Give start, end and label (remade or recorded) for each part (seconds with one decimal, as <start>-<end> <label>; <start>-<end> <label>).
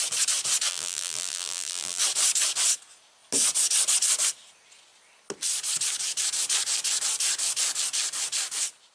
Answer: 0.0-0.7 recorded; 0.7-2.0 remade; 2.0-8.9 recorded